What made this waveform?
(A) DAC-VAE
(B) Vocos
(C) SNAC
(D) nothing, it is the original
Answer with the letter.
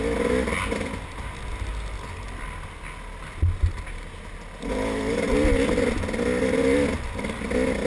D